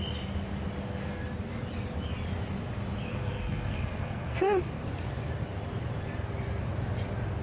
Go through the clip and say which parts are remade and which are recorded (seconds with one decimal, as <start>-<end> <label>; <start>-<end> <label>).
0.0-3.1 recorded; 3.1-4.7 remade; 4.7-7.4 recorded

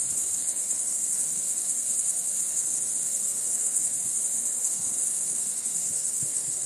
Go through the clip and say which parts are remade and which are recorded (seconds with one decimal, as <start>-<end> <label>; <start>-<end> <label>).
0.0-6.7 remade